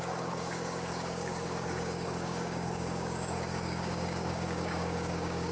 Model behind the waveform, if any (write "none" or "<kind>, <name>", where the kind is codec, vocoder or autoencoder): codec, DAC